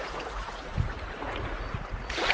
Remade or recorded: remade